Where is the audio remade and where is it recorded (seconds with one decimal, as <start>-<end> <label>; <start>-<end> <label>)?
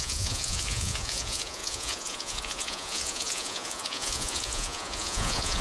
0.0-5.6 remade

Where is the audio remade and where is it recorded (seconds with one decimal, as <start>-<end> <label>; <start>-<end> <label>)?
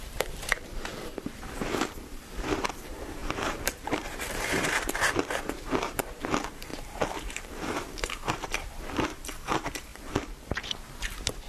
0.0-11.5 remade